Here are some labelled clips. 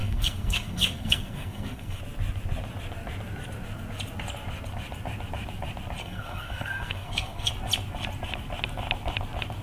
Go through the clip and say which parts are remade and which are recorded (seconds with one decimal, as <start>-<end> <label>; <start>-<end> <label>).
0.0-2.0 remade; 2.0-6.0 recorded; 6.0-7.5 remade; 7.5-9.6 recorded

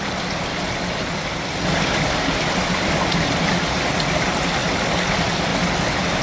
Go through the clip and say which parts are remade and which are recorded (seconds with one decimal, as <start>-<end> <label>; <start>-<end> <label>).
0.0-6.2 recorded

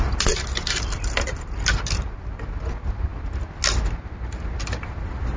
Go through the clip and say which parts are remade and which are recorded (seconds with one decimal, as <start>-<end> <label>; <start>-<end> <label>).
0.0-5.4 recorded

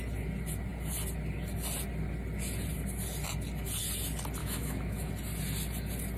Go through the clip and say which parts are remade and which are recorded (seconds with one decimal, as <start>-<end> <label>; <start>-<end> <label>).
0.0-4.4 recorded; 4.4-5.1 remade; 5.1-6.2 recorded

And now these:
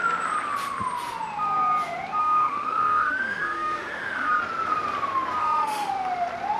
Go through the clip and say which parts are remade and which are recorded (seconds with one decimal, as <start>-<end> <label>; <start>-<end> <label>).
0.0-2.2 recorded; 2.2-4.3 remade; 4.3-5.4 recorded; 5.4-5.9 remade; 5.9-6.6 recorded

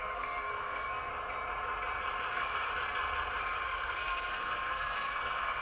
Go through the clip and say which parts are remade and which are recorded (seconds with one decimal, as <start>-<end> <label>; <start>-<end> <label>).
0.0-1.1 remade; 1.1-2.3 recorded; 2.3-2.7 remade; 2.7-3.4 recorded; 3.4-5.6 remade

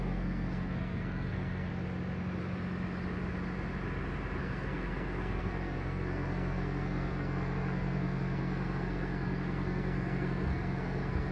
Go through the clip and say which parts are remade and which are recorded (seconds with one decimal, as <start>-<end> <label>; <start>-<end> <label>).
0.0-1.7 remade; 1.7-4.4 recorded; 4.4-11.3 remade

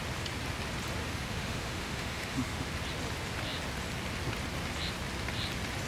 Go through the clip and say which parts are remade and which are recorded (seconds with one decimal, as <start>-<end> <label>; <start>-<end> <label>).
0.0-1.0 recorded; 1.0-2.7 remade; 2.7-5.9 recorded